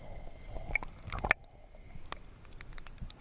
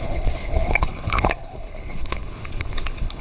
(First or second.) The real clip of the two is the first